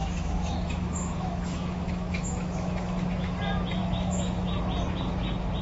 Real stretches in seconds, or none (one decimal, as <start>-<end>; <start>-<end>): 3.4-3.8; 4.5-5.6